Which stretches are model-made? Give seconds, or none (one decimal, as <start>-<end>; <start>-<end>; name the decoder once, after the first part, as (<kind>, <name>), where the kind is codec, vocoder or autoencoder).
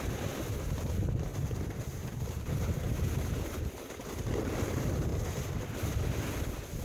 1.3-2.6 (vocoder, BigVGAN v2)